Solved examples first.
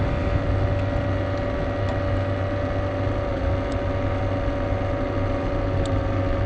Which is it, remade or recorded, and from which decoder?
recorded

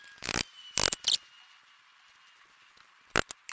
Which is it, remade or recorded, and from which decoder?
recorded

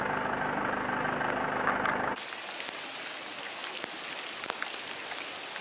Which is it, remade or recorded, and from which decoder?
recorded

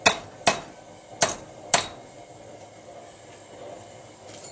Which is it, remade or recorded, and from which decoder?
recorded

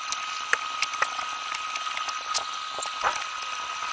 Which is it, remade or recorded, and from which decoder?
recorded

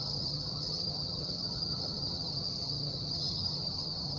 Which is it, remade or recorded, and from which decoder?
remade, vocoder, HiFi-GAN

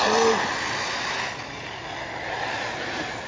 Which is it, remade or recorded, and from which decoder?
recorded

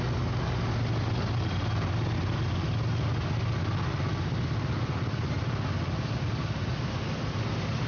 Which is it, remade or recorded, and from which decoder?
recorded